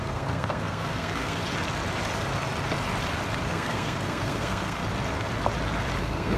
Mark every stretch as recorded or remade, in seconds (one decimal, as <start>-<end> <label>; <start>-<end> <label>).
0.0-1.4 remade; 1.4-3.5 recorded; 3.5-4.8 remade; 4.8-6.0 recorded; 6.0-6.4 remade